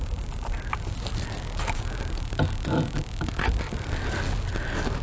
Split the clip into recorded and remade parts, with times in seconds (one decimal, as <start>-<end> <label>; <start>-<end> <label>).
0.0-5.0 recorded